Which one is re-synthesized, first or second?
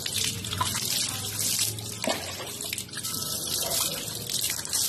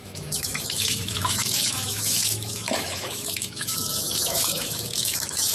second